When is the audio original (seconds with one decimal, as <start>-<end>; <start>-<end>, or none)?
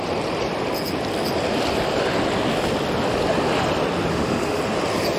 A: 0.0-4.1; 4.6-5.2